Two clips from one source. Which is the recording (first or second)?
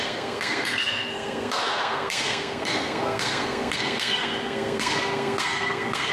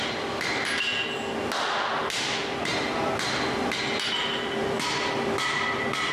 second